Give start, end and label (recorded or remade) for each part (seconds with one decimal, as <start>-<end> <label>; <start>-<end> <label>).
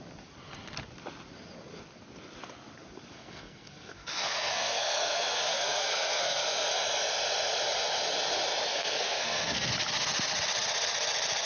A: 0.0-3.1 recorded; 3.1-6.7 remade; 6.7-8.7 recorded; 8.7-9.7 remade; 9.7-11.5 recorded